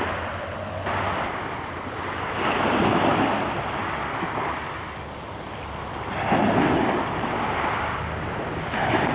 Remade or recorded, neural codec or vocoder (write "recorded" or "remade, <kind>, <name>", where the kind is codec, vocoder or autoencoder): recorded